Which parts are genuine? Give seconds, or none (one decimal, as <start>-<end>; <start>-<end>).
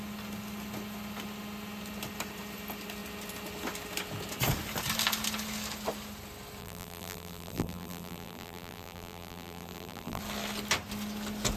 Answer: 0.0-6.6; 10.2-11.6